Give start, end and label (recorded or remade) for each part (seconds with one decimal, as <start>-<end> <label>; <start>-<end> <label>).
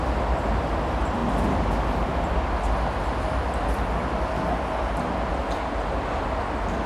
0.0-6.9 recorded